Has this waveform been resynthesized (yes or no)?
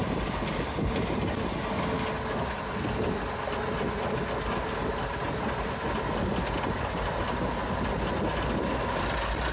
no